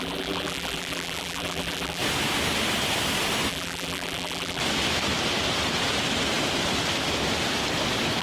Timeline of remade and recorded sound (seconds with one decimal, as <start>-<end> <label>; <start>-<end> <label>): 0.0-2.0 remade; 2.0-3.5 recorded; 3.5-4.6 remade; 4.6-8.2 recorded